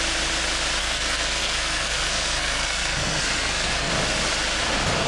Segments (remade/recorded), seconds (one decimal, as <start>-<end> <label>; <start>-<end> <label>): 0.0-0.8 recorded; 0.8-3.9 remade; 3.9-5.1 recorded

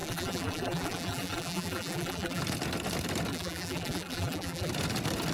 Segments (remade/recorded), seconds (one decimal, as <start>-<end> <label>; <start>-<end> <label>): 0.0-2.4 remade; 2.4-3.3 recorded; 3.3-4.7 remade; 4.7-5.3 recorded